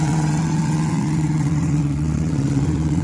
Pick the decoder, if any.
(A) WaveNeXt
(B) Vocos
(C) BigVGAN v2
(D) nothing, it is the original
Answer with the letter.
A